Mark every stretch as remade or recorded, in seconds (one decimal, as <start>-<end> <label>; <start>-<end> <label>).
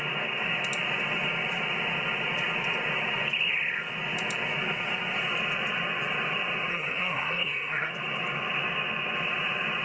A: 0.0-6.7 recorded; 6.7-7.9 remade; 7.9-9.8 recorded